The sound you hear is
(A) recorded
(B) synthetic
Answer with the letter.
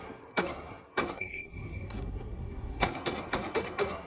B